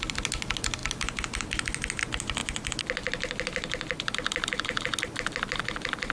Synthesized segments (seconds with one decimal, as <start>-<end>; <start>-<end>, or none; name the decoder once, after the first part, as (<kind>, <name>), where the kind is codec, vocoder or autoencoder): none